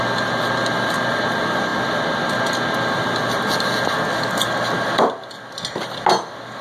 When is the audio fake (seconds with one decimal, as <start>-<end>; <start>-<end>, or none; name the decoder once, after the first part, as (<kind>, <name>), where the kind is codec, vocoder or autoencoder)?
none